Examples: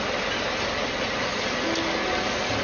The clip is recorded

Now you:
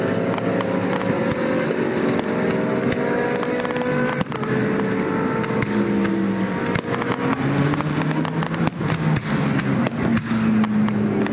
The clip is recorded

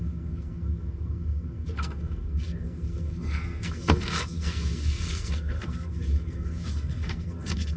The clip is remade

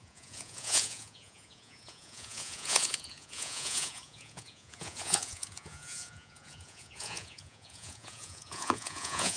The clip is remade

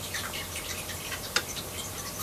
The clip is remade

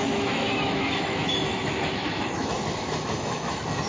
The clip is remade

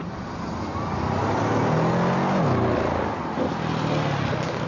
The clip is recorded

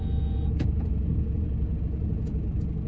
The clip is remade